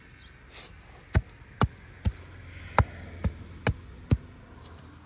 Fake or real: real